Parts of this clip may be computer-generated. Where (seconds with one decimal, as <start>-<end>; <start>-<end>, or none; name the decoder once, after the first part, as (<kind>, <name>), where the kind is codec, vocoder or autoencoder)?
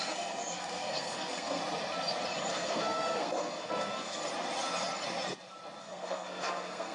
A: 0.0-1.6 (codec, SNAC); 2.5-4.2; 5.8-6.9